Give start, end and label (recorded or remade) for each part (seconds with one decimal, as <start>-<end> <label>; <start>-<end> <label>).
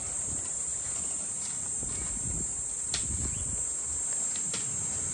0.0-5.1 recorded